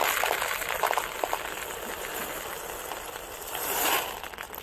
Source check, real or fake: real